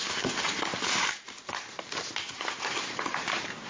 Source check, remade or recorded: recorded